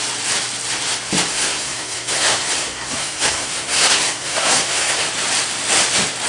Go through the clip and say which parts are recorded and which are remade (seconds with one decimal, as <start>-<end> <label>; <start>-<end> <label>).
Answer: 0.0-1.3 recorded; 1.3-5.1 remade; 5.1-6.3 recorded